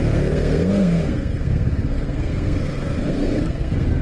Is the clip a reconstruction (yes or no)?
yes